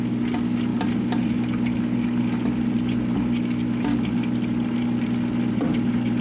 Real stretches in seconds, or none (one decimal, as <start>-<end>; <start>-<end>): 0.0-0.7; 2.2-6.2